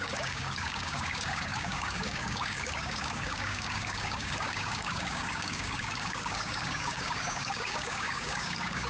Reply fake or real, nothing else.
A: fake